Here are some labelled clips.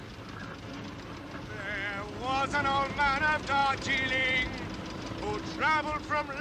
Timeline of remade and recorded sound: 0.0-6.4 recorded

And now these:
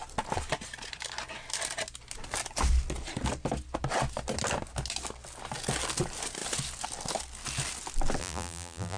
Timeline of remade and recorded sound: 0.0-8.2 recorded; 8.2-9.0 remade

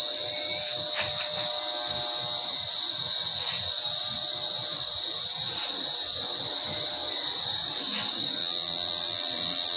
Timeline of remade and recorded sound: 0.0-8.4 recorded; 8.4-9.8 remade

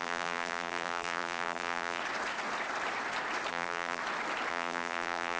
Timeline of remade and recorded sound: 0.0-2.0 remade; 2.0-3.5 recorded; 3.5-4.0 remade; 4.0-4.5 recorded; 4.5-5.4 remade

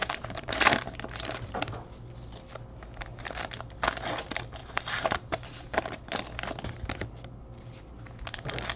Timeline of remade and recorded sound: 0.0-1.6 remade; 1.6-4.6 recorded; 4.6-5.8 remade; 5.8-8.8 recorded